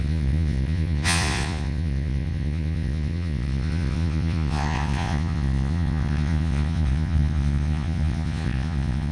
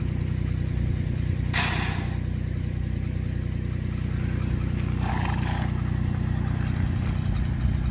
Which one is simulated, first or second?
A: first